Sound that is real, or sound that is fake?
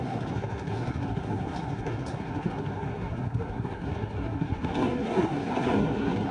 fake